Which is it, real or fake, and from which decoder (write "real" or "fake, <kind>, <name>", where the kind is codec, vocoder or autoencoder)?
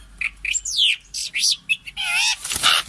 real